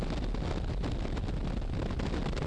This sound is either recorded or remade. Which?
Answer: recorded